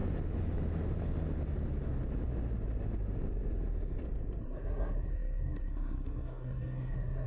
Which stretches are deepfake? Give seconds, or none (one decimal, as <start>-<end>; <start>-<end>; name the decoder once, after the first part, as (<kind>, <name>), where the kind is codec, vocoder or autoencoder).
4.4-7.3 (codec, SNAC)